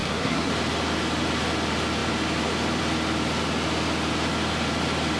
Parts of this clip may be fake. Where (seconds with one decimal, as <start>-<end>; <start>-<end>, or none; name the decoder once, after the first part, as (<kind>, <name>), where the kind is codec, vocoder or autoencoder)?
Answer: 0.0-0.5 (codec, SNAC)